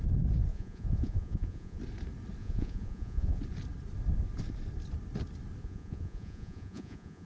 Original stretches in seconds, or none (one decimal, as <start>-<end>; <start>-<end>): 0.0-0.5; 1.8-2.4; 3.4-5.6